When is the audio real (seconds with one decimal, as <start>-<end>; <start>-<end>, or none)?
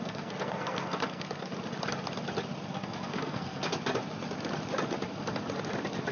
1.5-2.7; 3.7-6.1